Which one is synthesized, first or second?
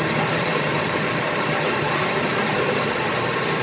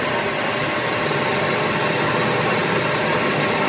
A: first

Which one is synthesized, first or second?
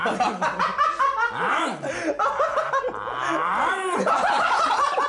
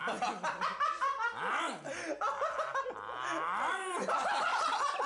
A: first